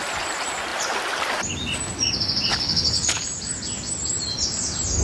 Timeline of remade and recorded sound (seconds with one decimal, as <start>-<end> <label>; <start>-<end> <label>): 0.0-2.5 recorded; 2.5-3.2 remade; 3.2-5.0 recorded